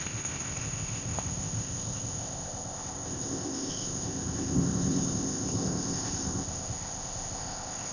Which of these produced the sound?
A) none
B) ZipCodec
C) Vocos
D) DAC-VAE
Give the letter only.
B